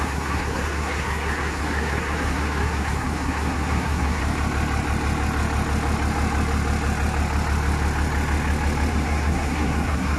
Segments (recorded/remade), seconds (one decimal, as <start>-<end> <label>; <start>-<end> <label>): 0.0-4.2 remade; 4.2-8.9 recorded; 8.9-10.2 remade